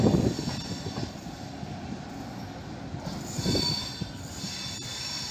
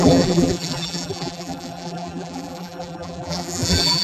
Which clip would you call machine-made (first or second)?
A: second